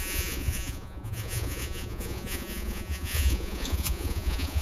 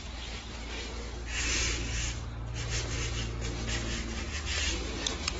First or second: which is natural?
second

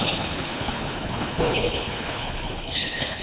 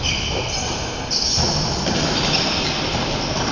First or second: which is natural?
second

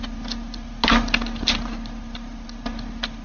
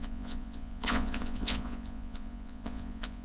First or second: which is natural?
first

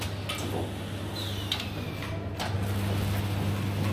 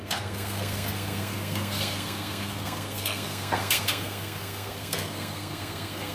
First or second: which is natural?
first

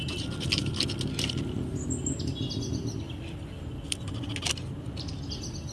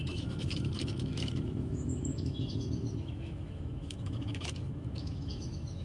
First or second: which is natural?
first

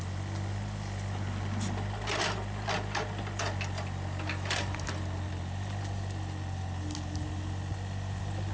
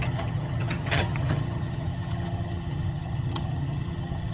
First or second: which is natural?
first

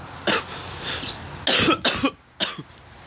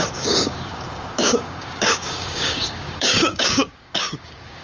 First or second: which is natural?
first